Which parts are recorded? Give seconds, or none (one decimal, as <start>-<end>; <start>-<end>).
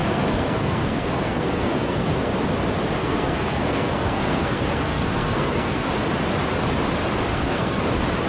2.3-3.0; 5.9-7.3; 7.9-8.3